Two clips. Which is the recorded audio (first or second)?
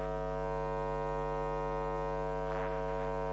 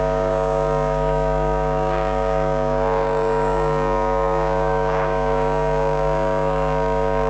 first